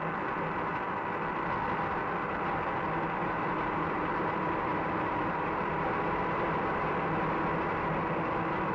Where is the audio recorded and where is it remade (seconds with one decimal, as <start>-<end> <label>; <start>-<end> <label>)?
0.0-3.2 recorded; 3.2-6.9 remade; 6.9-8.7 recorded